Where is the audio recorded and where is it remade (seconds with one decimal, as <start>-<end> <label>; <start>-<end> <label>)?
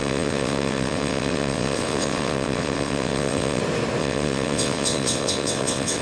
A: 0.0-3.6 remade; 3.6-4.0 recorded; 4.0-6.0 remade